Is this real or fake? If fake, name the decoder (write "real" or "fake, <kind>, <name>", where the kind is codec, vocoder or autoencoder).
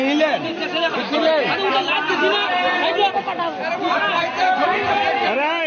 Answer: real